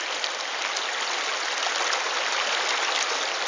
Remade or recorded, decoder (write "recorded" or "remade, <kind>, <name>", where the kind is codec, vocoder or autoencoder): recorded